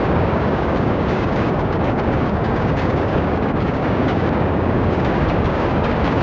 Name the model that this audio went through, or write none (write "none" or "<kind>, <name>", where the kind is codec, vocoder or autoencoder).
codec, DAC